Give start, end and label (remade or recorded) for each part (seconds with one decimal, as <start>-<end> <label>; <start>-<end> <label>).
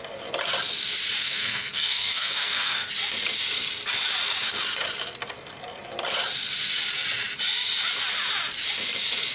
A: 0.0-1.2 recorded; 1.2-2.9 remade; 2.9-9.3 recorded